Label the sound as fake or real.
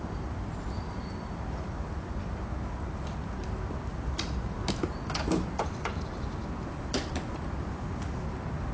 real